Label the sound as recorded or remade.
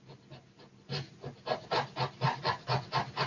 recorded